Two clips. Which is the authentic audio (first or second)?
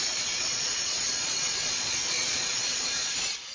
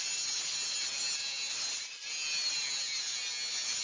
second